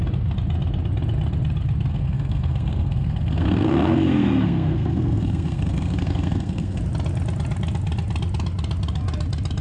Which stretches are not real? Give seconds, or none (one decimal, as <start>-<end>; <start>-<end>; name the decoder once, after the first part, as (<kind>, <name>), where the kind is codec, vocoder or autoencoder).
1.9-6.8 (codec, SNAC)